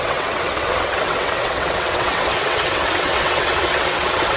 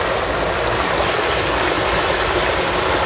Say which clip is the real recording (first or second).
second